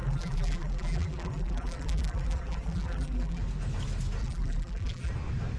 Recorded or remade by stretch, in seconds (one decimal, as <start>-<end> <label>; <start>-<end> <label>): 0.0-3.4 remade; 3.4-4.2 recorded; 4.2-5.1 remade; 5.1-5.6 recorded